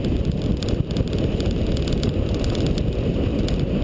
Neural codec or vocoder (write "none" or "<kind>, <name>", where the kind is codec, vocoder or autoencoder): none